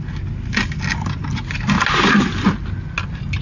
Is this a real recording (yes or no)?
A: yes